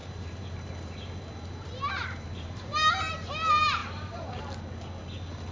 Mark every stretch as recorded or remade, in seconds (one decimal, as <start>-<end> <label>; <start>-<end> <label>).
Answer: 0.0-3.1 remade; 3.1-3.8 recorded; 3.8-4.4 remade; 4.4-5.5 recorded

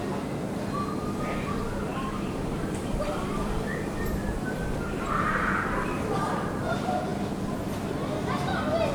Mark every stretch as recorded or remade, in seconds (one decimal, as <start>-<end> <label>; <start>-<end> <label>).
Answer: 0.0-1.9 recorded; 1.9-6.6 remade; 6.6-8.9 recorded

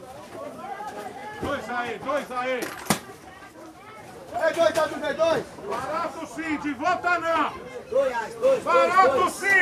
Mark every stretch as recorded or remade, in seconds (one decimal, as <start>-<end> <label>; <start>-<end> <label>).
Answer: 0.0-9.6 remade